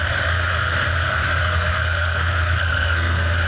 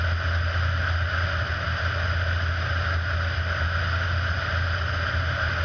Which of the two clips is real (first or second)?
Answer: second